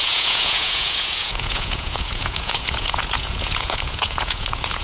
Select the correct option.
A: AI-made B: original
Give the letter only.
A